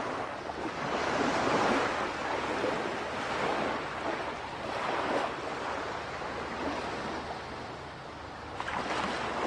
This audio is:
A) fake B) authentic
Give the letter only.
B